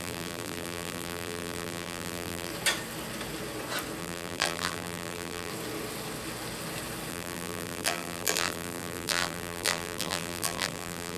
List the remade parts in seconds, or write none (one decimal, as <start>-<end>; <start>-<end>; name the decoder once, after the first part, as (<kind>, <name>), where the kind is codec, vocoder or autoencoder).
0.0-2.5 (vocoder, BigVGAN v2); 4.0-5.5; 7.1-11.2

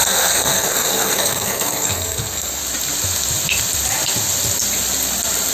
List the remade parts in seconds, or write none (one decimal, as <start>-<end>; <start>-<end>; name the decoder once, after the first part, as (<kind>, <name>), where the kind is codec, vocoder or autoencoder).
0.0-2.6 (codec, SNAC)

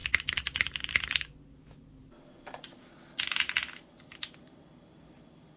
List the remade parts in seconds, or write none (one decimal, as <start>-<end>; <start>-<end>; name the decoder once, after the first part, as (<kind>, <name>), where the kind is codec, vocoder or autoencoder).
none